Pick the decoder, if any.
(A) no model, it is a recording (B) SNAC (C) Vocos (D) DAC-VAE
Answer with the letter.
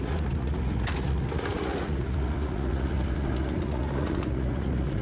C